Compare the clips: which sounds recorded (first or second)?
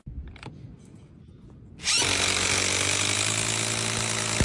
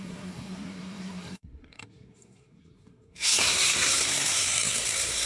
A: first